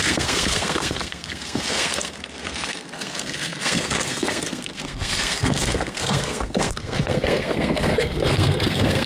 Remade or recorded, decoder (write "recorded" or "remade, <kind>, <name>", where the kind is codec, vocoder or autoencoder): remade, codec, SNAC